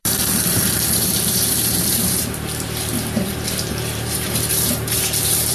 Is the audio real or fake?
fake